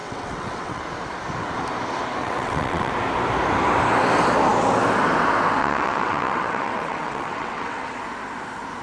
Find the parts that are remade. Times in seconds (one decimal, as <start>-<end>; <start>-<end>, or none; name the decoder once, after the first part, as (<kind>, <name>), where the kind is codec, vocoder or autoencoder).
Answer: 0.0-0.8 (vocoder, WaveNeXt); 2.2-2.9; 5.6-8.0